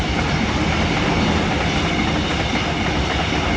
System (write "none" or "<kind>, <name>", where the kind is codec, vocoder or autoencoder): none